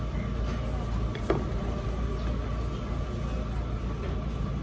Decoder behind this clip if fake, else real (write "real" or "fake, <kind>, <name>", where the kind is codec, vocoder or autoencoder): real